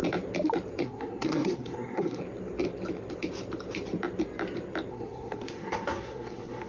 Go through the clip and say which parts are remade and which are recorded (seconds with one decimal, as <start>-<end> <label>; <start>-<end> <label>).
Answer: 0.0-0.8 recorded; 0.8-2.2 remade; 2.2-4.9 recorded; 4.9-6.7 remade